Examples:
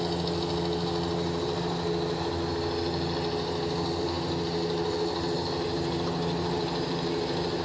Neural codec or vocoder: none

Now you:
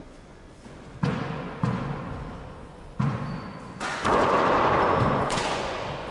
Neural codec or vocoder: vocoder, Vocos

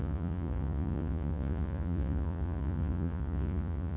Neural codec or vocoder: vocoder, Vocos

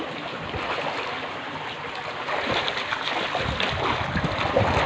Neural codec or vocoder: none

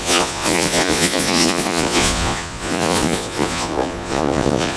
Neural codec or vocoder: vocoder, Vocos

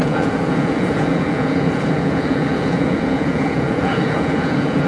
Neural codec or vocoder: vocoder, Vocos